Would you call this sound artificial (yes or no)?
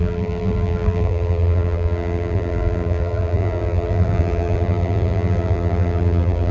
yes